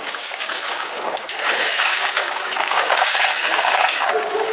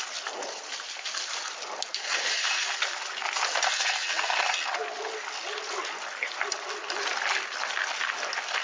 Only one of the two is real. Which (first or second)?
second